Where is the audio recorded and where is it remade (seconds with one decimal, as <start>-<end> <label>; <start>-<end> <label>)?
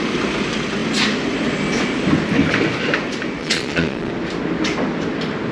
0.0-3.4 recorded; 3.4-4.1 remade; 4.1-5.5 recorded